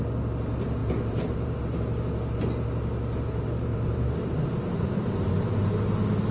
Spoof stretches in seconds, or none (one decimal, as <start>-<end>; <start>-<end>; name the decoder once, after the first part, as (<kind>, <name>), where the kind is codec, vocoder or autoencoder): 0.8-1.6 (vocoder, BigVGAN v2); 3.7-5.3